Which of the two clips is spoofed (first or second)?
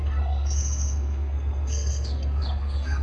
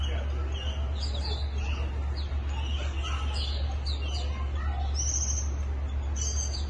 first